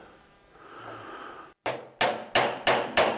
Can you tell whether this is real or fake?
real